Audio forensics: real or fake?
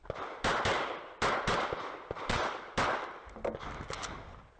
real